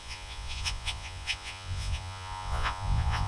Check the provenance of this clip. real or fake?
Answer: fake